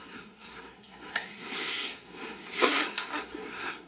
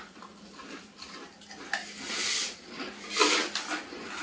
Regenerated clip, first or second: first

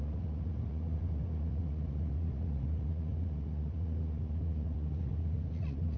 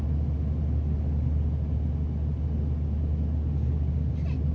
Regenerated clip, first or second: first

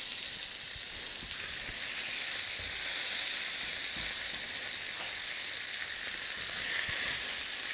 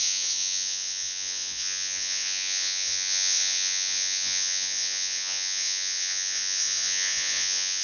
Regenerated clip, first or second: second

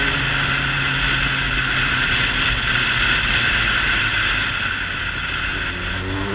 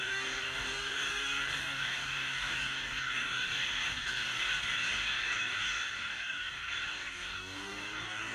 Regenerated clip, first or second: second